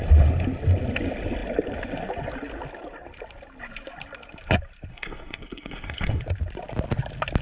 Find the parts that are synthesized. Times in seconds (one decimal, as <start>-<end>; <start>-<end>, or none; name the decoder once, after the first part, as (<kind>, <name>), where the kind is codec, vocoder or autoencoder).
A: 4.9-6.2 (codec, SNAC)